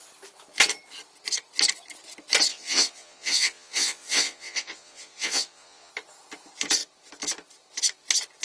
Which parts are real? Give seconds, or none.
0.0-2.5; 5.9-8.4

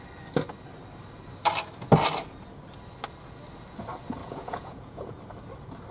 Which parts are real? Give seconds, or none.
0.0-4.2; 5.2-5.9